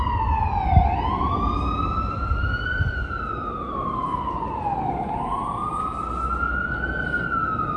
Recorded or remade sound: recorded